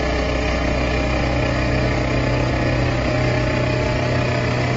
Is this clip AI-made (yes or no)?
no